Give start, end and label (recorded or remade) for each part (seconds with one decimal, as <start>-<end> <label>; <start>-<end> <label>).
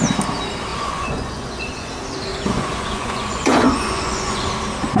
0.0-0.7 recorded; 0.7-1.9 remade; 1.9-2.3 recorded; 2.3-4.5 remade; 4.5-5.0 recorded